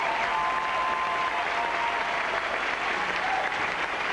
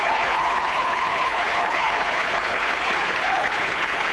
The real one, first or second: first